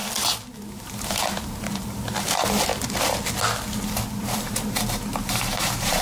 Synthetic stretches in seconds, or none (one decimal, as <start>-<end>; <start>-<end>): 0.5-2.7; 4.2-6.0